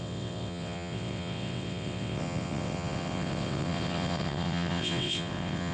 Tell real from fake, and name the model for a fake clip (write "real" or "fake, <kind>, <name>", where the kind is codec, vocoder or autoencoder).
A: fake, vocoder, WaveNeXt